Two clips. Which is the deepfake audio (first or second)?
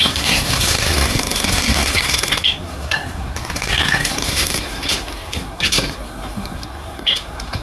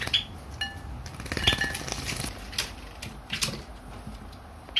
first